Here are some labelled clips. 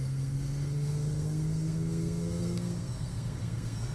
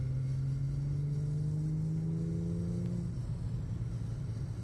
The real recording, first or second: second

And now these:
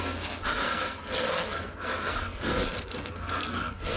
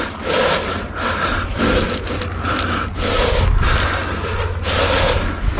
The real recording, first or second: second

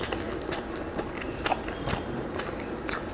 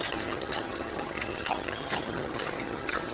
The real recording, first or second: first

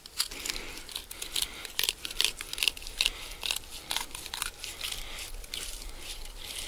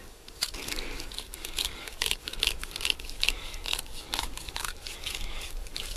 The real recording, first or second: first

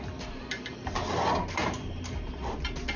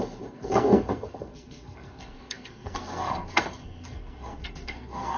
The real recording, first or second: first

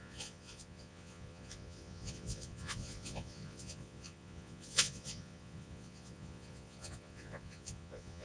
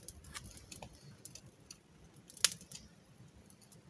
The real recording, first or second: second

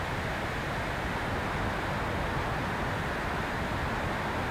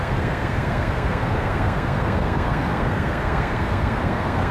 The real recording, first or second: first